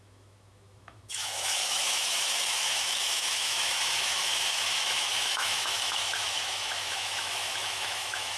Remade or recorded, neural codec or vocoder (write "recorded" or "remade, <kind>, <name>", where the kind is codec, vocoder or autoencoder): remade, autoencoder, DAC-VAE